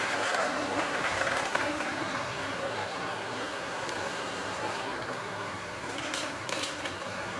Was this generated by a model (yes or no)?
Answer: yes